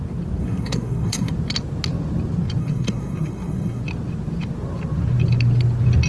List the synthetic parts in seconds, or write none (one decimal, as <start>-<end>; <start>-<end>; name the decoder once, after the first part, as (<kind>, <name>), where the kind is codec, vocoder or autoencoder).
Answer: 0.4-1.3 (codec, SNAC); 2.6-3.8

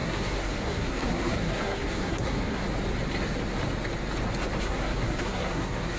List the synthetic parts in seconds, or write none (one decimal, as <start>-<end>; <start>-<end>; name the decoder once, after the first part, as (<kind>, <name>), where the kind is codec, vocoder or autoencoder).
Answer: 0.0-2.6 (codec, SNAC); 4.6-6.0

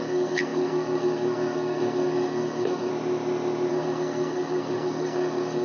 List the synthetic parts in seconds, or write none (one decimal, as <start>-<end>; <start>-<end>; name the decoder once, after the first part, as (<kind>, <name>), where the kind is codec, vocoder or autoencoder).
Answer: 0.0-2.9 (codec, SNAC); 3.7-5.6